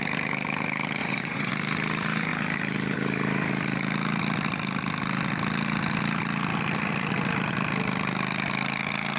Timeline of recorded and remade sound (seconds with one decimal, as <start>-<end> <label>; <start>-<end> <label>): 0.0-1.0 recorded; 1.0-1.5 remade; 1.5-9.2 recorded